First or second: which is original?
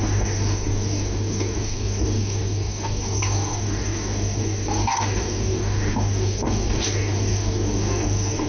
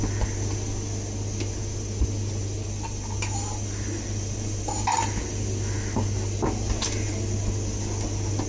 second